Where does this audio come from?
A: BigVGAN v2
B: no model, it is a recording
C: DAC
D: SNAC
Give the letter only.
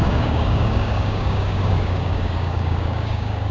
C